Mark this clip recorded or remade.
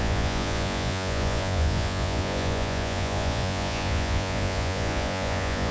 remade